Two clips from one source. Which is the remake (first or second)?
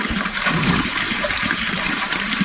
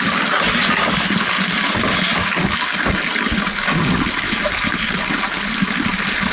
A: first